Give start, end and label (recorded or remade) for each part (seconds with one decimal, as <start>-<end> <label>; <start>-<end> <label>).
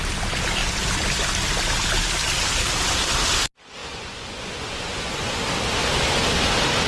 0.0-3.8 recorded; 3.8-5.4 remade; 5.4-6.9 recorded